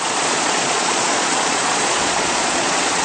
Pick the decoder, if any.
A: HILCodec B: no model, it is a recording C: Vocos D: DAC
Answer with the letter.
C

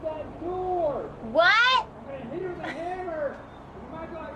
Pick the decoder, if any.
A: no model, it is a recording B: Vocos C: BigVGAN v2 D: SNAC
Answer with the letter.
A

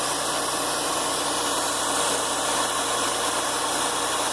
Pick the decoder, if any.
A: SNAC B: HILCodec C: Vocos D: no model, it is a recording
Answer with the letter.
D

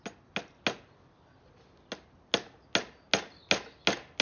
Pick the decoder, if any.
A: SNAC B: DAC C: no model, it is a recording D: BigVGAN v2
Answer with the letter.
C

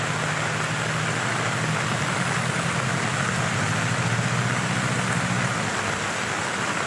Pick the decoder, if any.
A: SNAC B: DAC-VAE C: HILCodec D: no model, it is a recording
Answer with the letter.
D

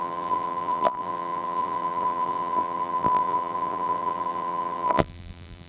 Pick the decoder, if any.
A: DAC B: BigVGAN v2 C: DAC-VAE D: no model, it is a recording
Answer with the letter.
B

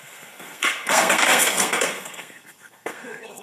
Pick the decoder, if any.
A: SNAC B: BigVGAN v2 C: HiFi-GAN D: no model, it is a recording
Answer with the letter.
A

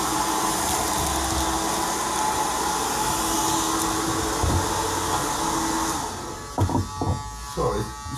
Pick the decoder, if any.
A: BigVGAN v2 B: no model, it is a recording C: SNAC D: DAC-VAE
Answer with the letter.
B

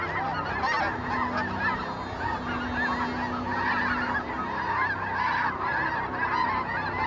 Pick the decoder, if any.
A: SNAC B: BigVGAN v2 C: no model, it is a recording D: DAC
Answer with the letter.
C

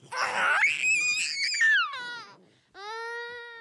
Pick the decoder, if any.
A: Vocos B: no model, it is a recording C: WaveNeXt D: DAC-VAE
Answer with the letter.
B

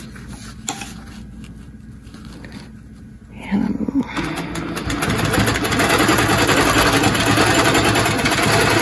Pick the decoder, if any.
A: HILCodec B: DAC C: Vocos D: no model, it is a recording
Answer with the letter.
D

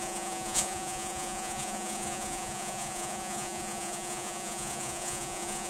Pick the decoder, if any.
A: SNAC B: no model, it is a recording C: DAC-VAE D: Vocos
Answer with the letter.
D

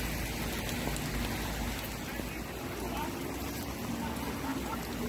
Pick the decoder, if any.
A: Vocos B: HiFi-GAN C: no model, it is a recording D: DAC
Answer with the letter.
C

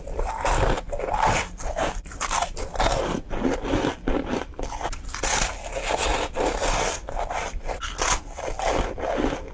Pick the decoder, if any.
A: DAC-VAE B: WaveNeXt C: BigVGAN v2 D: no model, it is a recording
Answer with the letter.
D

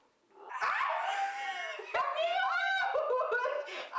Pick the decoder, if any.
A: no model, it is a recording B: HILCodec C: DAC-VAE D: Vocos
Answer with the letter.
A